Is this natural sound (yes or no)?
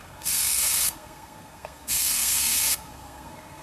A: no